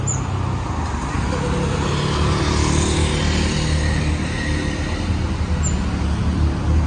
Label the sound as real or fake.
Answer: real